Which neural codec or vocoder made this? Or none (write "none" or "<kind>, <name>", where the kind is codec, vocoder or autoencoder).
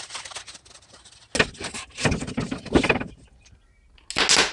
none